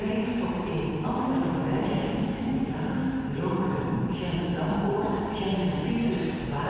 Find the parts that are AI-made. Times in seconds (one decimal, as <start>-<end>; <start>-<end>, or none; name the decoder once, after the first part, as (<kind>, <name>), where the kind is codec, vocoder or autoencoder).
1.6-2.5 (autoencoder, DAC-VAE)